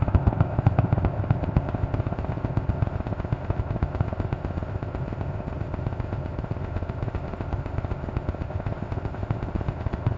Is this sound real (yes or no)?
no